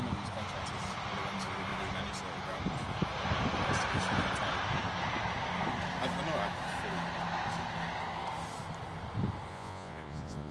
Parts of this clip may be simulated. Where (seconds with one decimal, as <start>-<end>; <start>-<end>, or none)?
9.5-10.5